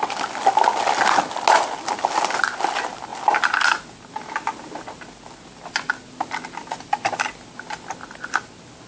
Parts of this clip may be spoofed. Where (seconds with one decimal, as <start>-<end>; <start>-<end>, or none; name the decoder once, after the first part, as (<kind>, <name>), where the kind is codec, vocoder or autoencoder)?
none